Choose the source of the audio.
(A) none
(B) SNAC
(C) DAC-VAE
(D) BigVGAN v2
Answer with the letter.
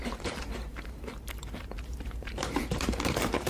D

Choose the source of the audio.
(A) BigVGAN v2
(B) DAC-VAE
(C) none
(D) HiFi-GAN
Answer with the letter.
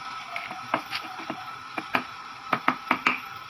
C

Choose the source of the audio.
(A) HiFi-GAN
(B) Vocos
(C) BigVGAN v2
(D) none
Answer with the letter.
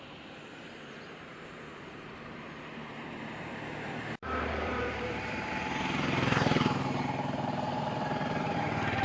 C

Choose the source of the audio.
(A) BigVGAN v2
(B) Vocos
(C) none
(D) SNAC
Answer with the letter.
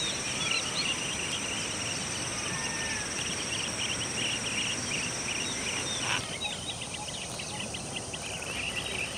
C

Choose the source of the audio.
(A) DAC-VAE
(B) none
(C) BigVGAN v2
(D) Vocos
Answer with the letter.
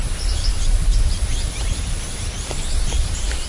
C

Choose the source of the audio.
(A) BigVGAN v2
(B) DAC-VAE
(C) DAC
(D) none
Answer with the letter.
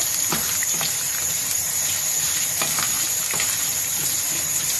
A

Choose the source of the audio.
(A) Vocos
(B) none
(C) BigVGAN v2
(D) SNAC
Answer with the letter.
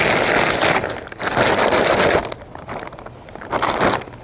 B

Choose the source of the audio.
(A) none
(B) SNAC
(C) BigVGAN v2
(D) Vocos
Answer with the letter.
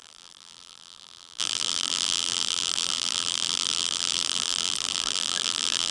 C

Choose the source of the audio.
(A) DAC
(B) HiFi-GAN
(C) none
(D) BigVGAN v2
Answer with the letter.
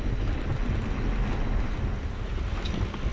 C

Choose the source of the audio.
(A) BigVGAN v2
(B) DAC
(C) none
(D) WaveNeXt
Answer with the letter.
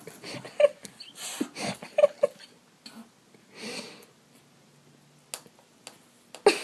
C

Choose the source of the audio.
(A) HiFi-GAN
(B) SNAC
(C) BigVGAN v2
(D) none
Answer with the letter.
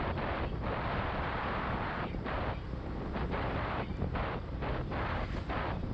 C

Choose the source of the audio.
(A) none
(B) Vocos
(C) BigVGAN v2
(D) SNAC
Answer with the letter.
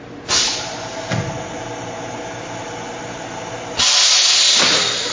A